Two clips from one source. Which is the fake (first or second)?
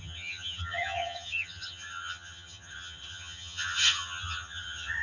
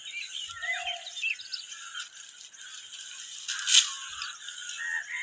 first